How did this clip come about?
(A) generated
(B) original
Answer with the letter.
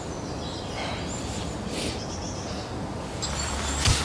B